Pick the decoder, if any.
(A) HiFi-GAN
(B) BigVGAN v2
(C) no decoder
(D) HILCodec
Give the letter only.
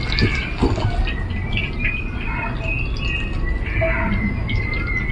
C